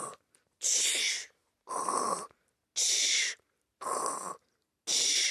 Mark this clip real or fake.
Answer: real